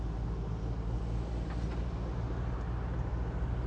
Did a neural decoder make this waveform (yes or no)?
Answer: no